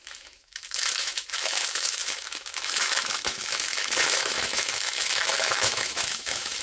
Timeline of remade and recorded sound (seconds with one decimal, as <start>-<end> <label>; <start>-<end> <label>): 0.0-6.6 remade